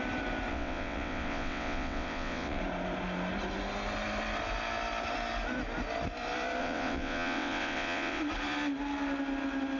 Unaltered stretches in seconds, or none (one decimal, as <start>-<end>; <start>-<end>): 0.0-0.5; 2.6-6.6; 8.2-9.8